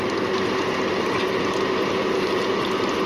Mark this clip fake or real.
real